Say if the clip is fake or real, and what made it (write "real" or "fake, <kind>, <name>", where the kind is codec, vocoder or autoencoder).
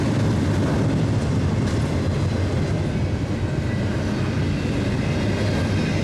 real